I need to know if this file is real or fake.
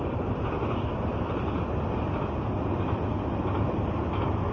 real